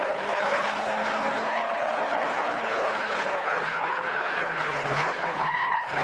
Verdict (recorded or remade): remade